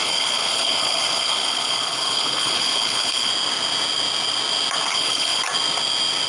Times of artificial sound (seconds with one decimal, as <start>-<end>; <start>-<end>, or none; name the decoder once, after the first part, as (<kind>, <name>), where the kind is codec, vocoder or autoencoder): 0.0-3.3 (codec, HILCodec); 4.9-5.4